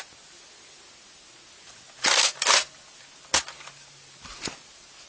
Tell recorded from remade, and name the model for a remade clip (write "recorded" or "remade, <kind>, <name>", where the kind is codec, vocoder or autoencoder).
recorded